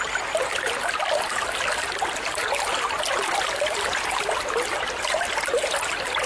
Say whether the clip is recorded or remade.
recorded